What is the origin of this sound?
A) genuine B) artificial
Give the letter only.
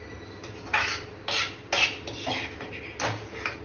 A